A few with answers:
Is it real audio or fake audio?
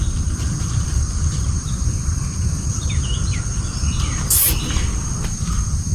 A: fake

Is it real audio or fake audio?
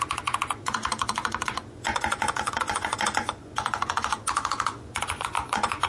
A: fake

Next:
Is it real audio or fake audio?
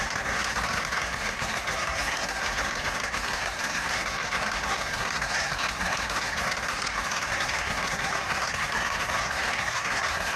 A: fake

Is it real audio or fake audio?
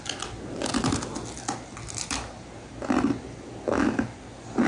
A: real